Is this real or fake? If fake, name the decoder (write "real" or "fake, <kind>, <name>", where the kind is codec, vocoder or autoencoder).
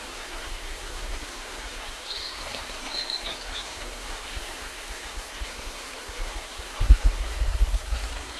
fake, codec, SNAC